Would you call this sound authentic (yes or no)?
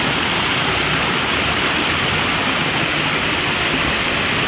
yes